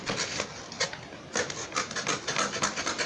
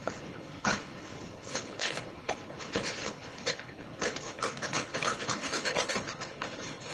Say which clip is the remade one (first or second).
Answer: second